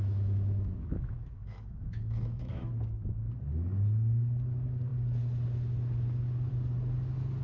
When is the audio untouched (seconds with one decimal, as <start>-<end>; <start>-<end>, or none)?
2.7-7.4